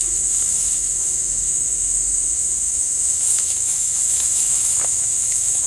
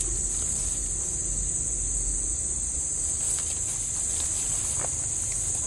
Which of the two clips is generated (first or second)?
first